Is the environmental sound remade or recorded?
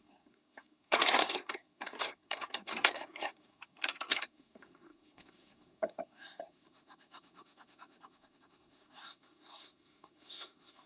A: remade